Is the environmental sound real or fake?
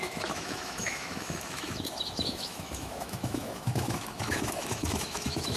fake